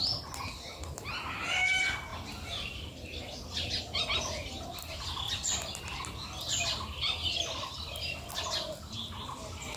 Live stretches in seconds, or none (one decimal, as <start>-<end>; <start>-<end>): 0.0-9.8